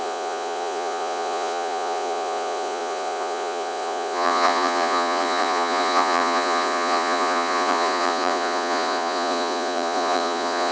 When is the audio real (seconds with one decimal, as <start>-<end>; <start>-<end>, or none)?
none